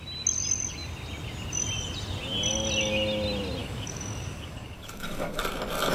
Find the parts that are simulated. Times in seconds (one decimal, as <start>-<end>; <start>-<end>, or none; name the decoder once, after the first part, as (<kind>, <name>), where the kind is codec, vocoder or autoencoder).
3.6-5.4 (codec, DAC)